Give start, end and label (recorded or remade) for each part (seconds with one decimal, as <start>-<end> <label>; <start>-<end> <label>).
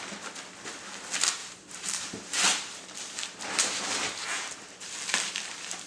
0.0-1.4 recorded; 1.4-4.9 remade; 4.9-5.9 recorded